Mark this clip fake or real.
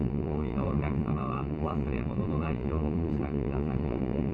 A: fake